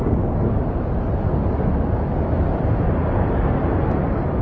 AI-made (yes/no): no